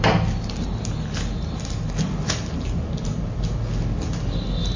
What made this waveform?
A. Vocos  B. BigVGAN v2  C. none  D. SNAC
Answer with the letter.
C